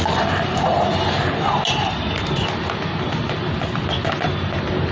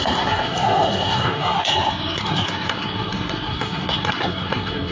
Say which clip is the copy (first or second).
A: second